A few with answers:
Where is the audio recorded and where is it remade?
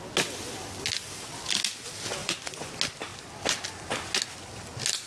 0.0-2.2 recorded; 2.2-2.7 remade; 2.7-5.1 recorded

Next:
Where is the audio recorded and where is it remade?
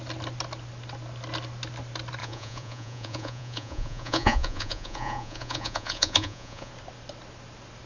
0.0-2.2 recorded; 2.2-6.7 remade; 6.7-7.9 recorded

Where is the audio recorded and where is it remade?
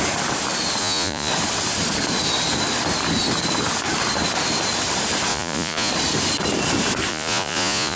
0.0-0.8 recorded; 0.8-1.3 remade; 1.3-5.3 recorded; 5.3-5.9 remade; 5.9-7.1 recorded; 7.1-8.0 remade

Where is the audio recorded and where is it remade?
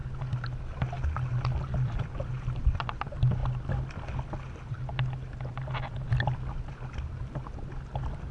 0.0-8.3 recorded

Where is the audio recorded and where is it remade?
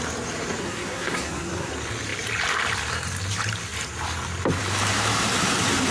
0.0-0.6 recorded; 0.6-1.7 remade; 1.7-5.9 recorded